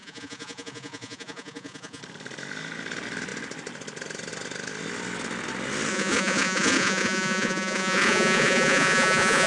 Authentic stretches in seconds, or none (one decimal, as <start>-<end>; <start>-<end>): 2.0-5.9